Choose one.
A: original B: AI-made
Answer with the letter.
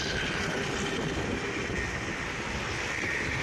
A